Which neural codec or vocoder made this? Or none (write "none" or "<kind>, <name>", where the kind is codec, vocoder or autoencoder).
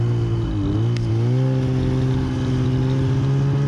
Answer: none